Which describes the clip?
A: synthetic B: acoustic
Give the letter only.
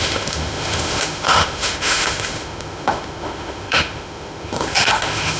A